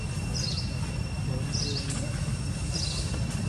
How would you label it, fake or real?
real